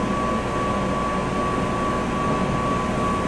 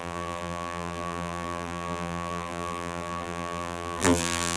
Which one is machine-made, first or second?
second